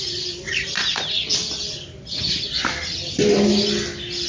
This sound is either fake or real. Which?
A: real